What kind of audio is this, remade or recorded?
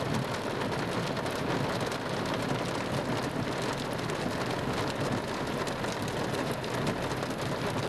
recorded